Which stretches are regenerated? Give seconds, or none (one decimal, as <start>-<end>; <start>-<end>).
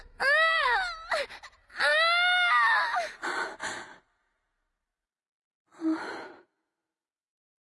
none